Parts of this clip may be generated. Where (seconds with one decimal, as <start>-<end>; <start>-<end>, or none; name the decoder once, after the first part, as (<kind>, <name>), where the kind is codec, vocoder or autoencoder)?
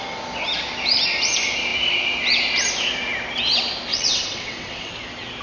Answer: 3.9-4.9 (vocoder, WaveNeXt)